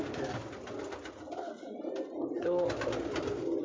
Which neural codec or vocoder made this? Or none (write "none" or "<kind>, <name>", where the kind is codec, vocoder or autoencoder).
none